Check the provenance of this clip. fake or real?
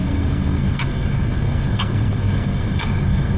fake